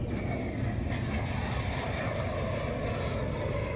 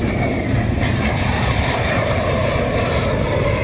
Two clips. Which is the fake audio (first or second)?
second